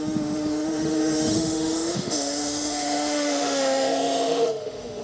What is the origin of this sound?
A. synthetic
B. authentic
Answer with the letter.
A